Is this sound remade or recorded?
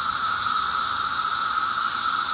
recorded